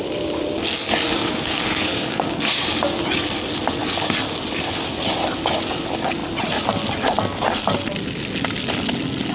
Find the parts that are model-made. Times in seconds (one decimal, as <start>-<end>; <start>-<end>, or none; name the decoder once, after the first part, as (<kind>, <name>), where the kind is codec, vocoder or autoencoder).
1.2-2.7 (codec, DAC)